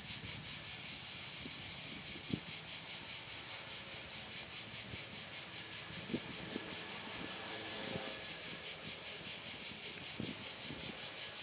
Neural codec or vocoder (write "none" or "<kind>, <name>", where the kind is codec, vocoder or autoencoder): none